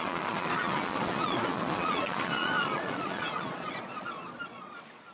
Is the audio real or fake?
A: fake